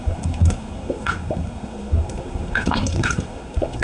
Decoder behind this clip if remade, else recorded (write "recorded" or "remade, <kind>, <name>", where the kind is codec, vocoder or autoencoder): remade, codec, SNAC